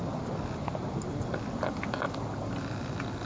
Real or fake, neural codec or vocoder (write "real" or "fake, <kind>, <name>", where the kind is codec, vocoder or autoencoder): real